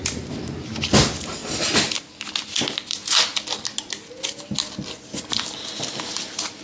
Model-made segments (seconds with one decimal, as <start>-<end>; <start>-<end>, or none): none